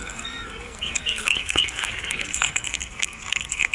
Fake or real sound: fake